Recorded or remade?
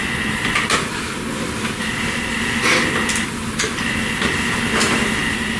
recorded